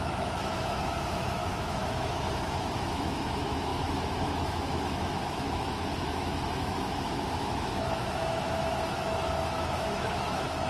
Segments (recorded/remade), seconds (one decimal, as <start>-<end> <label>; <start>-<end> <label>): 0.0-10.7 remade